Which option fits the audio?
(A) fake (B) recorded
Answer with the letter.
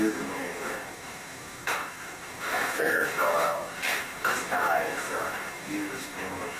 A